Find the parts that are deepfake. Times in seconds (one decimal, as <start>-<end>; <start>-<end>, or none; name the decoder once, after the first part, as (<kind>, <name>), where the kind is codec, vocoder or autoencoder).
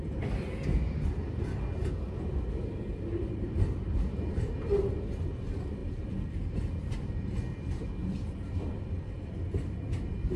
5.8-6.9 (vocoder, BigVGAN v2)